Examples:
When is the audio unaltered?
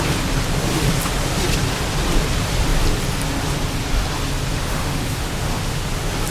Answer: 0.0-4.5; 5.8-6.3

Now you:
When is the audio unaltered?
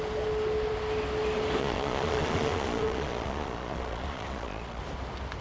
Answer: 0.0-1.6; 4.8-5.4